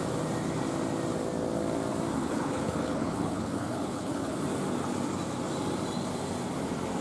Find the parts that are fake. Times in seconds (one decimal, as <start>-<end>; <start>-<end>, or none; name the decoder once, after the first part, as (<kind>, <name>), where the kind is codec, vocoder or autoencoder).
2.2-4.4 (codec, HILCodec)